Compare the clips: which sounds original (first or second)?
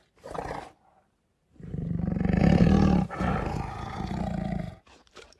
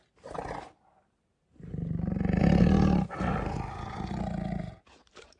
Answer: second